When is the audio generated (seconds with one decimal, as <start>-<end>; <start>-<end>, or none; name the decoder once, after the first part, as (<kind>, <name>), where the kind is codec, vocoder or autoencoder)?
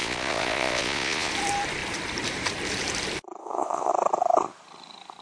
0.0-1.3 (vocoder, Vocos); 3.4-3.9